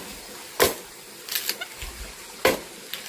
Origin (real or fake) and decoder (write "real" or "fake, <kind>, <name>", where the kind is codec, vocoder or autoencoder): real